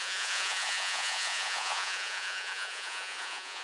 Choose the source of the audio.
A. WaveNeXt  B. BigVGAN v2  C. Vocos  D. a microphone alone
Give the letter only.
C